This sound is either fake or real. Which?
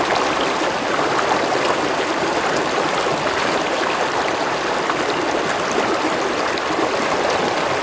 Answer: real